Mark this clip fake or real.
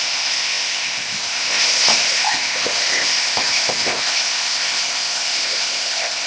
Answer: fake